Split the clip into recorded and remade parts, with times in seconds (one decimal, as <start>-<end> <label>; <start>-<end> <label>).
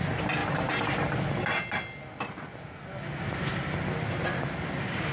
0.0-5.1 recorded